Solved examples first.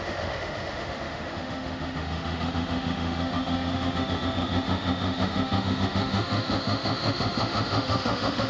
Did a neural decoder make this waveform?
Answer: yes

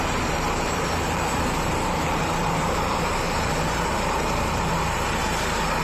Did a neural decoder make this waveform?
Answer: yes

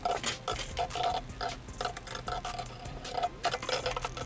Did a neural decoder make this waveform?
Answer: no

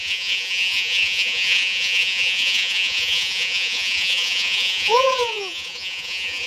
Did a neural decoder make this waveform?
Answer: yes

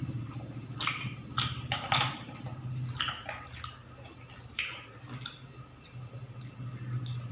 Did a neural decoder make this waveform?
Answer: no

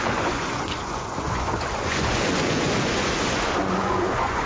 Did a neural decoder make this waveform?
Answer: yes